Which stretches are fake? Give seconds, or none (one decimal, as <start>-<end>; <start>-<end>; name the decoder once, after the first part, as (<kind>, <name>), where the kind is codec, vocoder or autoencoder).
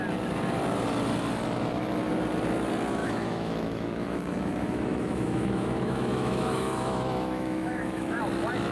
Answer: 3.0-8.2 (autoencoder, DAC-VAE)